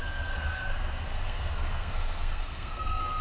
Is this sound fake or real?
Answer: fake